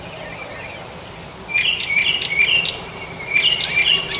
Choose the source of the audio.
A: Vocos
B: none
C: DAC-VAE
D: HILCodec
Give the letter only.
B